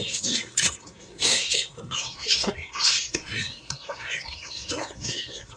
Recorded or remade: remade